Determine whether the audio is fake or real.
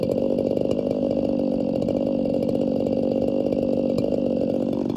real